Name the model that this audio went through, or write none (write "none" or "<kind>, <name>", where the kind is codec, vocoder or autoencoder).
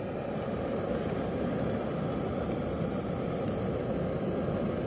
none